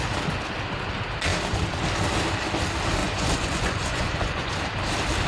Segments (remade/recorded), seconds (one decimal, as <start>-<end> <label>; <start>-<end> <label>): 0.0-3.0 recorded; 3.0-4.5 remade; 4.5-5.3 recorded